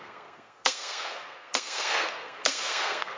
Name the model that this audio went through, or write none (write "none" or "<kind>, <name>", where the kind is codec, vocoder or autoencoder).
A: codec, SNAC